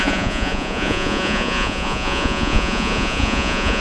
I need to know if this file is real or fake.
fake